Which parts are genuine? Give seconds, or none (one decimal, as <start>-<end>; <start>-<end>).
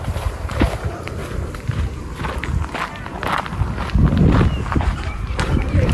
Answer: 1.2-4.7